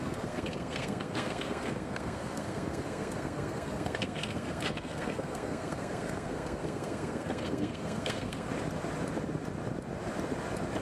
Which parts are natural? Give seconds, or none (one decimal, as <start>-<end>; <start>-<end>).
8.5-10.8